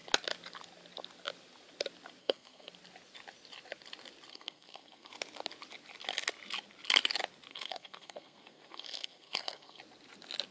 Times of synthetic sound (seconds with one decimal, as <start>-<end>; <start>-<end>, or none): 2.2-2.7; 4.3-5.1; 7.5-9.8